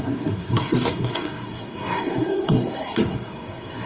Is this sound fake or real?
fake